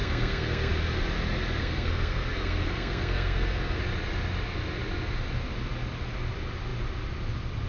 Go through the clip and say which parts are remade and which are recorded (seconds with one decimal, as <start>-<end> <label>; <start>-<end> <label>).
0.0-0.7 remade; 0.7-1.6 recorded; 1.6-3.8 remade; 3.8-7.7 recorded